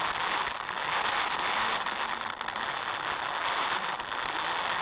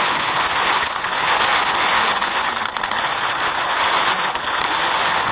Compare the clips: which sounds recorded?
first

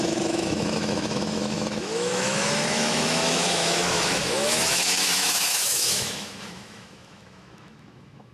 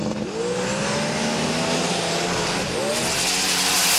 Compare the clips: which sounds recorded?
second